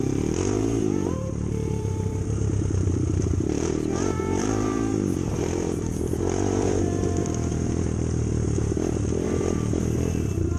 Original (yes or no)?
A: no